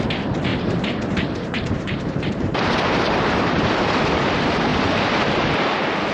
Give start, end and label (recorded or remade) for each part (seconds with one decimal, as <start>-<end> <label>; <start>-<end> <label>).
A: 0.0-0.5 recorded; 0.5-4.2 remade; 4.2-6.1 recorded